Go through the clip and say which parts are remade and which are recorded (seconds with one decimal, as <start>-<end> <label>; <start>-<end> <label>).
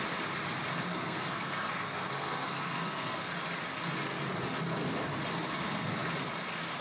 0.0-0.9 recorded; 0.9-3.3 remade; 3.3-6.8 recorded